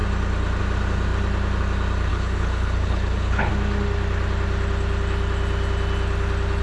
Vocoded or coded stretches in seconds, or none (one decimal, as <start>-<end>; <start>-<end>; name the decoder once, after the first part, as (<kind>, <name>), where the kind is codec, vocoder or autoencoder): 2.1-3.5 (codec, HILCodec)